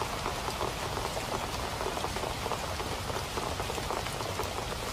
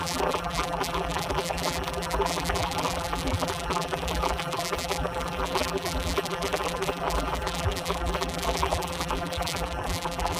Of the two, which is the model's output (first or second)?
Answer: second